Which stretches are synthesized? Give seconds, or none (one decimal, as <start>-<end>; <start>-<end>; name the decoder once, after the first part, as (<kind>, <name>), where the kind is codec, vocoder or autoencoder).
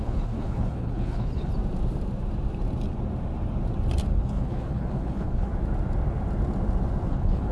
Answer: 0.0-1.5 (codec, HILCodec); 4.1-5.5; 7.1-7.5